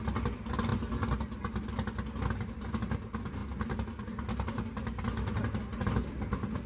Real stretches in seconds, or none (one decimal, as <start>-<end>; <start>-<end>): 0.0-6.7